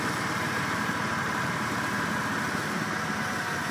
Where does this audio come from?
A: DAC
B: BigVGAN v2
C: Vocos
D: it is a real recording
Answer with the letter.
B